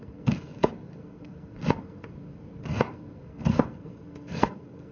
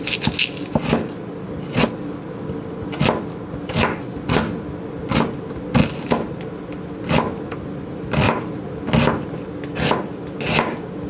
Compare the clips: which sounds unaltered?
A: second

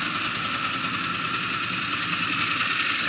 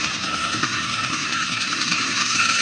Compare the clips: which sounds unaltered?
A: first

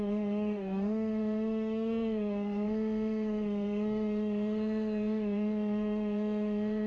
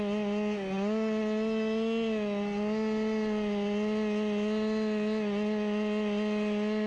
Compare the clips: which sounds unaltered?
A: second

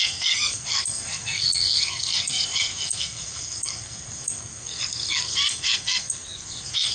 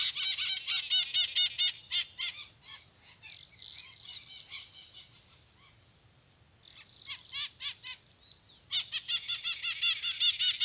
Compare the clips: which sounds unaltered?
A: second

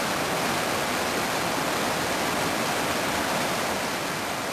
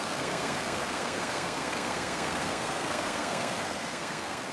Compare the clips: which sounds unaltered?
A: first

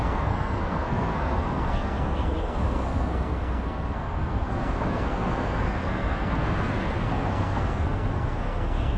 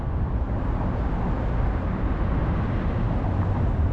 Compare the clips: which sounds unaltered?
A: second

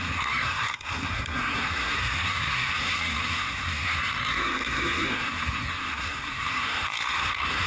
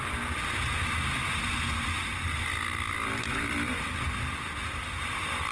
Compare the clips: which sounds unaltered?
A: second